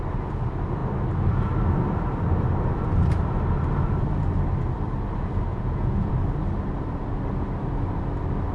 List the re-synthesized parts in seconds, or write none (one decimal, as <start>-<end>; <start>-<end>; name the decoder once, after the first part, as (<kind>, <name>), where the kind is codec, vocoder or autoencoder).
5.5-6.1 (vocoder, Vocos)